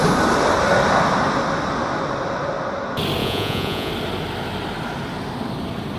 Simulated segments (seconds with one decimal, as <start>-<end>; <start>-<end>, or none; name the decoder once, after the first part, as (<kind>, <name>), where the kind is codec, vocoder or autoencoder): 3.2-3.9 (vocoder, Vocos)